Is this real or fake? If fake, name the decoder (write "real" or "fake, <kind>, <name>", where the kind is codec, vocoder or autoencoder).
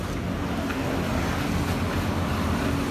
real